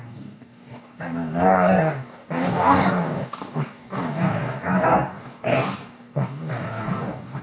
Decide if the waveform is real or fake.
fake